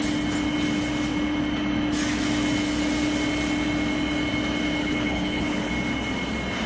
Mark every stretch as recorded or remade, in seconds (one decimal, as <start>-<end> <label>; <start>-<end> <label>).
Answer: 0.0-4.8 recorded; 4.8-5.7 remade; 5.7-6.7 recorded